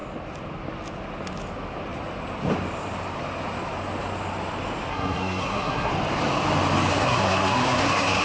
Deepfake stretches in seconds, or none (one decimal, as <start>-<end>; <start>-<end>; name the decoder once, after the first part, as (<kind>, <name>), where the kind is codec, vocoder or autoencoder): 4.9-5.9 (codec, SNAC); 6.9-8.2